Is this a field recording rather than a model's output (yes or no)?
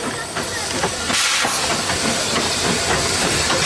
no